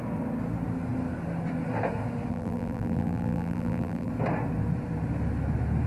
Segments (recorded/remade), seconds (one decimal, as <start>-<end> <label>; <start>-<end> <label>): 0.0-2.3 recorded; 2.3-4.1 remade; 4.1-5.9 recorded